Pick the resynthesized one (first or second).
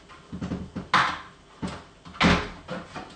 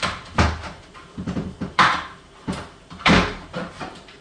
second